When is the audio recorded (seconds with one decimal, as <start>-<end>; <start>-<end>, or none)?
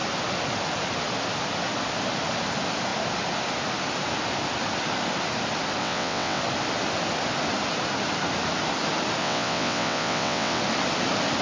0.0-5.8; 6.4-9.2; 10.6-11.4